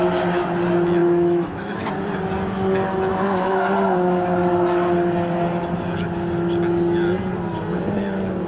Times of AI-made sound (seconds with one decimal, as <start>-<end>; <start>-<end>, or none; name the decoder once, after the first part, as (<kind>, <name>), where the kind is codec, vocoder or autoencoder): 1.0-1.9 (autoencoder, DAC-VAE); 3.1-3.7